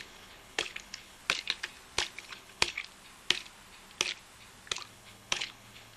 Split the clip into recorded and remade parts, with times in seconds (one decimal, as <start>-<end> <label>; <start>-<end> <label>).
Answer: 0.0-1.2 remade; 1.2-2.2 recorded; 2.2-2.8 remade; 2.8-4.9 recorded; 4.9-6.0 remade